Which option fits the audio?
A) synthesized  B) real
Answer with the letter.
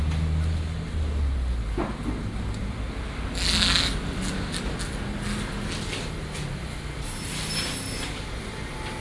B